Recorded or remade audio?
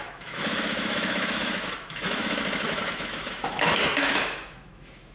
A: remade